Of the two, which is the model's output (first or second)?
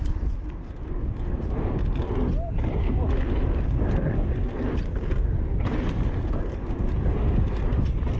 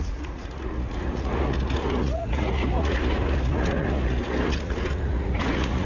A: second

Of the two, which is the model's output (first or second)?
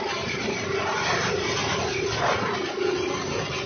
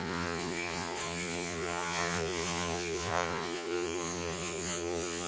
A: second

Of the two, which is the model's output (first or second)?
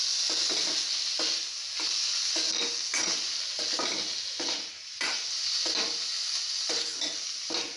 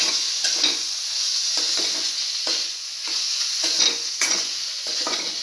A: second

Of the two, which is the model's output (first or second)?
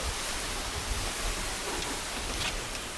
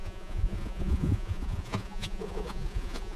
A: second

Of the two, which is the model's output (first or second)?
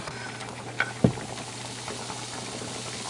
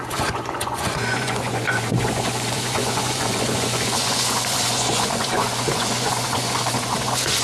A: second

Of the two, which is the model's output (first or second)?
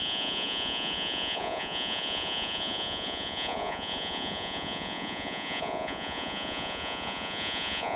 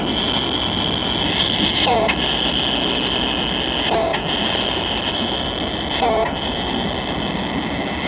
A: first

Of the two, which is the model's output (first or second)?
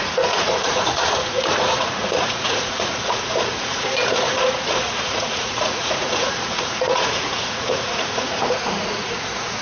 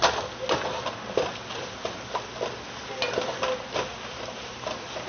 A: first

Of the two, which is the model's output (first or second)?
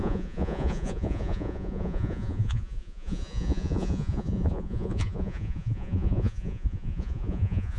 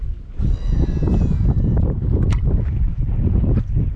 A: first